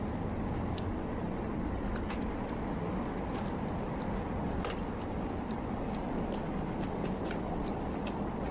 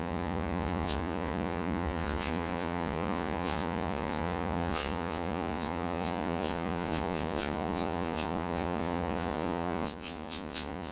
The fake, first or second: second